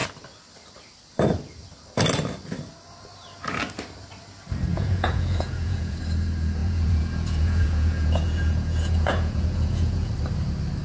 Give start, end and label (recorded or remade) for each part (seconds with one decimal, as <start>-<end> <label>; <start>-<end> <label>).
0.0-4.7 recorded; 4.7-6.0 remade; 6.0-6.6 recorded; 6.6-10.1 remade; 10.1-10.8 recorded